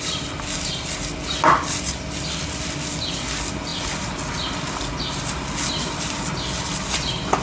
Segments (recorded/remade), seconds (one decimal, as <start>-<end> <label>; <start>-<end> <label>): 0.0-7.4 recorded